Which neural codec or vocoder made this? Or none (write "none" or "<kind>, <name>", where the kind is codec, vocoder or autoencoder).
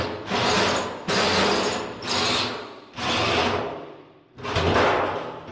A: none